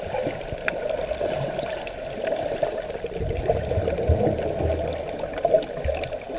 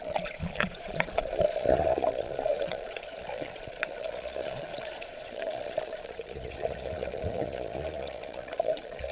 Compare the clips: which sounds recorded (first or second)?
first